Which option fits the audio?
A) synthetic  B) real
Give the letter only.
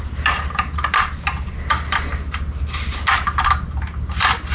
B